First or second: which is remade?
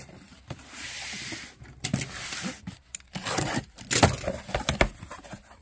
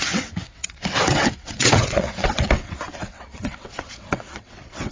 second